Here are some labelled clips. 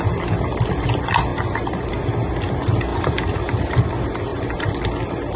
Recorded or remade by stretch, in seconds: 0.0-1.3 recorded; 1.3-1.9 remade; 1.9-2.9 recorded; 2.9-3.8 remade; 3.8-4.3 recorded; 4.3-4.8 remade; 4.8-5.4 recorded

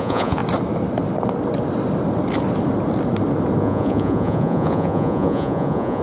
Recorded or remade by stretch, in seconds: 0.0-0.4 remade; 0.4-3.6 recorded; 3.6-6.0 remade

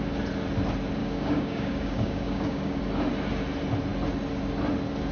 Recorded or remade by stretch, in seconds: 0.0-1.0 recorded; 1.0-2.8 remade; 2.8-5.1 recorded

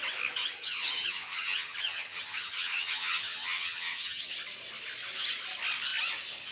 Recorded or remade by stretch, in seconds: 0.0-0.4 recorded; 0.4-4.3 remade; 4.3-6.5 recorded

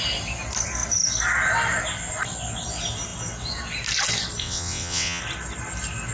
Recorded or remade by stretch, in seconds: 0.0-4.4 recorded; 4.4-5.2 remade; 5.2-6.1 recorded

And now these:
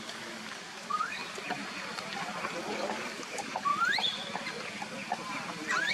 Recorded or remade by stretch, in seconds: 0.0-1.2 remade; 1.2-2.7 recorded; 2.7-3.7 remade; 3.7-5.9 recorded

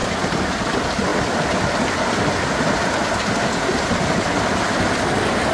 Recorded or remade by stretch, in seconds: 0.0-5.5 recorded